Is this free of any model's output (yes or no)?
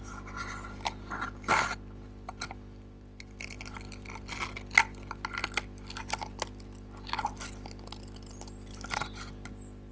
yes